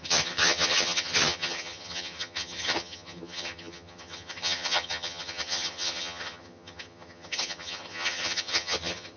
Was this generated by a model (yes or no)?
yes